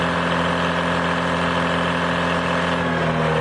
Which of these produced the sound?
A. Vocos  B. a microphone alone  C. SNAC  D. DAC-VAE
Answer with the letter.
B